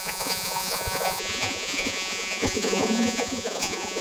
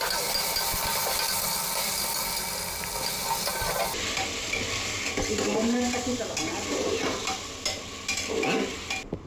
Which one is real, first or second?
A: second